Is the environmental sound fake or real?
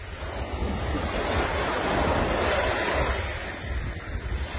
real